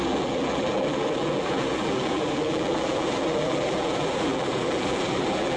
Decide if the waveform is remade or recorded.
remade